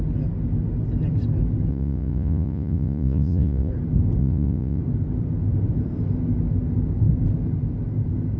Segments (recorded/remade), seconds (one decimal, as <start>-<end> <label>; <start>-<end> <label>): 0.0-1.7 recorded; 1.7-3.7 remade; 3.7-4.2 recorded; 4.2-4.8 remade; 4.8-8.4 recorded